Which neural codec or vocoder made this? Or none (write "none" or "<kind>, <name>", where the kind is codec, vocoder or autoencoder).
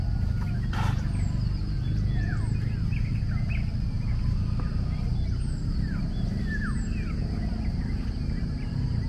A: none